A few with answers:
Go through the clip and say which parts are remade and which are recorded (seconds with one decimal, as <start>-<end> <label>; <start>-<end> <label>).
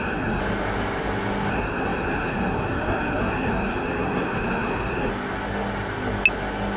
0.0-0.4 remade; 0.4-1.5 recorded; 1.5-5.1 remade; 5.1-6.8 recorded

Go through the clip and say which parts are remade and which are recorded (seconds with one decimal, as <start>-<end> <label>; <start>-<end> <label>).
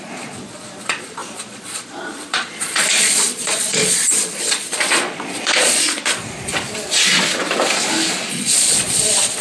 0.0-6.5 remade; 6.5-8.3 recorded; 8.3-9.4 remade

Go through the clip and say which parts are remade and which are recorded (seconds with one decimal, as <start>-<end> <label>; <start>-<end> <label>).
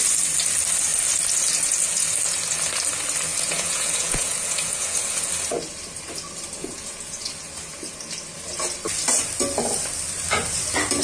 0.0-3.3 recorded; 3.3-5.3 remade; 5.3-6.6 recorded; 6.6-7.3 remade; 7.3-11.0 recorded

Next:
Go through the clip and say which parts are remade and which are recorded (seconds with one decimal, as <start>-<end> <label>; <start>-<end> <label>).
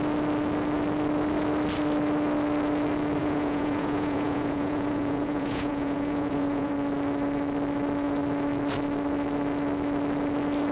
0.0-3.2 recorded; 3.2-6.7 remade; 6.7-10.7 recorded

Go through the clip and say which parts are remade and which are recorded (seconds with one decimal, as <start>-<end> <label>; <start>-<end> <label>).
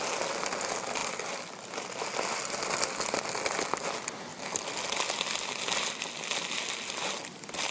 0.0-7.7 recorded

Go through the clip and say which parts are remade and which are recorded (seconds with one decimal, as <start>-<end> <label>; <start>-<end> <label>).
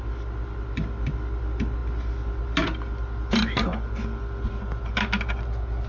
0.0-5.9 recorded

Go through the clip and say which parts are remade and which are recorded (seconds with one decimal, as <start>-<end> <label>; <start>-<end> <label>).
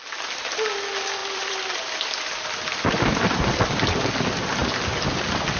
0.0-1.2 recorded; 1.2-2.7 remade; 2.7-5.6 recorded